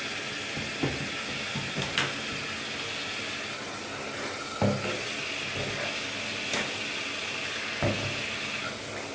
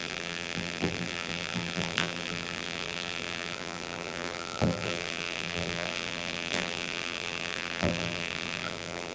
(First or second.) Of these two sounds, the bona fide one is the first